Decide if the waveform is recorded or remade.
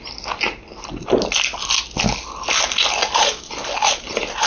recorded